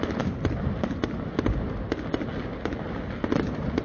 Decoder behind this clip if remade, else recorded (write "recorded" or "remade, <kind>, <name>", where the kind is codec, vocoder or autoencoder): recorded